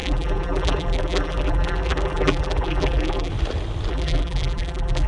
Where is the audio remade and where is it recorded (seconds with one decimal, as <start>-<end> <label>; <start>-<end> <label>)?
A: 0.0-3.3 remade; 3.3-3.9 recorded; 3.9-5.1 remade